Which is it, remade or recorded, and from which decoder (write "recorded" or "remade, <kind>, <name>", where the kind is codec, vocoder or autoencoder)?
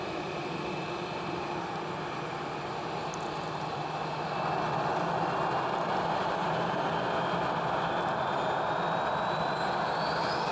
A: recorded